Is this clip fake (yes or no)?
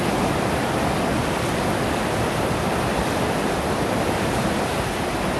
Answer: no